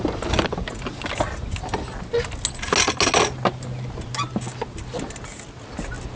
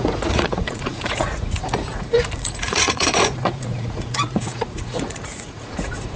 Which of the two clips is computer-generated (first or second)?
second